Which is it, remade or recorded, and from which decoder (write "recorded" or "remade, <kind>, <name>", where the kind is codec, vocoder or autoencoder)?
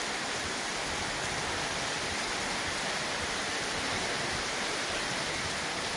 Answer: recorded